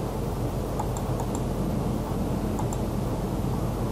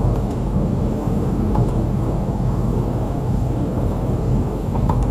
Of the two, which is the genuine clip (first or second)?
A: first